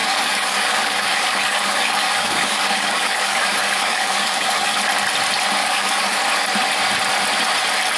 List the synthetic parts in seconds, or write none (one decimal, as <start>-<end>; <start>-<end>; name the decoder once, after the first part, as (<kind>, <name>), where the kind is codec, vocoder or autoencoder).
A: 0.0-4.8 (codec, DAC); 5.6-6.2

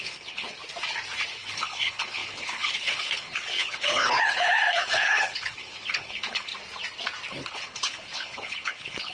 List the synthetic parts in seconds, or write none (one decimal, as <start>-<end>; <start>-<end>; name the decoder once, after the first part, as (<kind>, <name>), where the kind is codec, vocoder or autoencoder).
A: 0.0-0.6 (codec, HILCodec); 1.3-6.5; 7.3-9.1

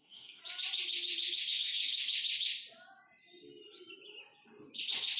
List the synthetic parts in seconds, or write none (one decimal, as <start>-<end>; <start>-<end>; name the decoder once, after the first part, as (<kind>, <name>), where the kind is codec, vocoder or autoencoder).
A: 0.0-0.4 (codec, DAC); 1.5-1.9

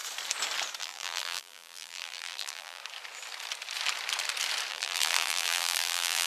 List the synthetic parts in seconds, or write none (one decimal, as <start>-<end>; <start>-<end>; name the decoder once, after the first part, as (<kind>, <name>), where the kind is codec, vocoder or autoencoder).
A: 0.8-2.8 (vocoder, BigVGAN v2); 4.7-6.3

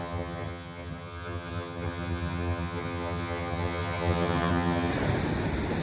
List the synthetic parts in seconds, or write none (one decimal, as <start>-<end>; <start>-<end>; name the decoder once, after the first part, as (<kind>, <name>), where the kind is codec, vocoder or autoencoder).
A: 0.0-4.9 (vocoder, HiFi-GAN)

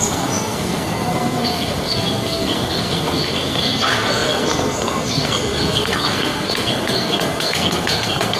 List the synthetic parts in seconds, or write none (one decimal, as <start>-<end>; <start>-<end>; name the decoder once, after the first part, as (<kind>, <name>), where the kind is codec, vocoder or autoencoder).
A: 0.0-8.4 (codec, SNAC)

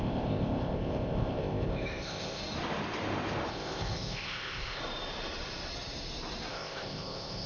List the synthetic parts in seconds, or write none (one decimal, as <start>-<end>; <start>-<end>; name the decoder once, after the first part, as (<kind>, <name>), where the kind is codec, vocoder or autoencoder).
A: 0.0-2.4 (codec, ZipCodec); 3.5-4.8; 6.5-7.5

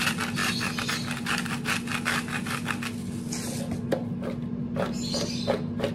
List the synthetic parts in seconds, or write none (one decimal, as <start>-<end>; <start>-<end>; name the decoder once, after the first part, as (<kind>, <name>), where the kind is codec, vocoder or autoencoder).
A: none